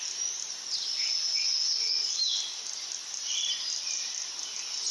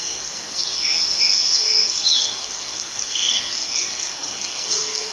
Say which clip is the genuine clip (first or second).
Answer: first